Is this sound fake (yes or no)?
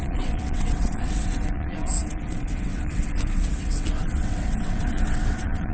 yes